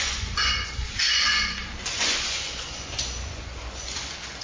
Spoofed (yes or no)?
yes